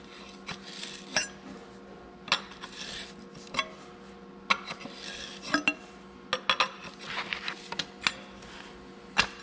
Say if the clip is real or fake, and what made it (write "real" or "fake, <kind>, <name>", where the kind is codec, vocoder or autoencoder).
real